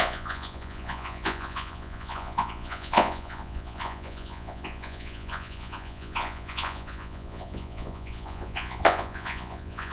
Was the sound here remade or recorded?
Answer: remade